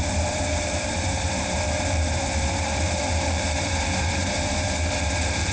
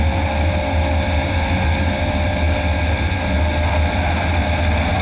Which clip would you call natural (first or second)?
second